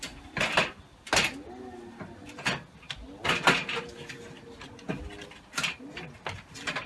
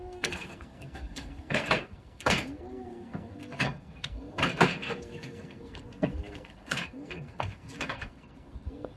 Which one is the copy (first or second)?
second